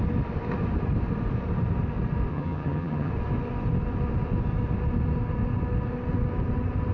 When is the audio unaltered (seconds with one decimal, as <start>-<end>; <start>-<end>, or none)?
0.0-2.3; 3.1-6.9